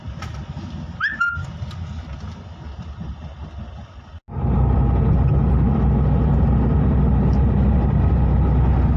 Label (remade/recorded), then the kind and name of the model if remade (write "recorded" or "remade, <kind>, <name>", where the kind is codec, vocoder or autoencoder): recorded